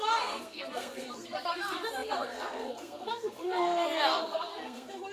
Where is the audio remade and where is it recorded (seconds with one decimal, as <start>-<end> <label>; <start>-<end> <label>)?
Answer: 0.0-5.1 remade